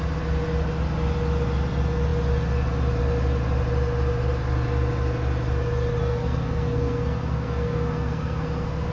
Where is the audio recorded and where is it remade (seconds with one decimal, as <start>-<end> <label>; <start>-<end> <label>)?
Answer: 0.0-6.0 recorded; 6.0-8.9 remade